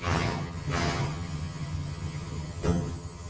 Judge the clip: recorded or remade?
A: remade